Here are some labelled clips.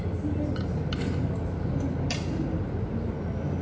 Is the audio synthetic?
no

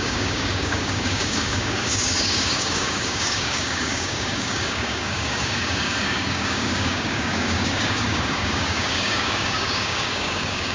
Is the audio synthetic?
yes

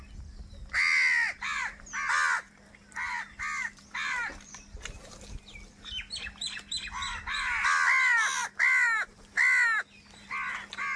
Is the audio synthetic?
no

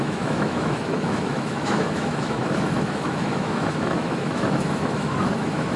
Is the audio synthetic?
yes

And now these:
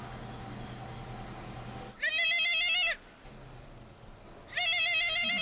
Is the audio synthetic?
no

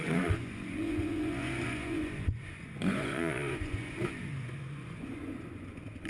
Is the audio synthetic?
yes